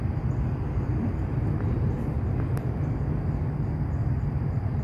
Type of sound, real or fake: real